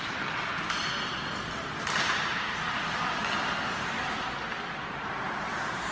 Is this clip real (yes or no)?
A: yes